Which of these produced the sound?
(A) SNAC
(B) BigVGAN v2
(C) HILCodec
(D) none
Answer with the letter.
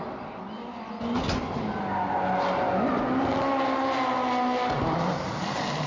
D